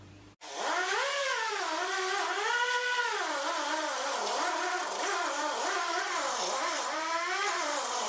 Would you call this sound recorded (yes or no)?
no